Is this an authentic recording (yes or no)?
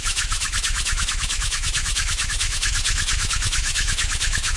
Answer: no